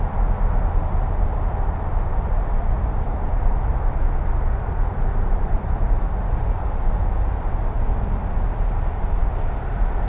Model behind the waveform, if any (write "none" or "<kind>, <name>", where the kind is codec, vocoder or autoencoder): none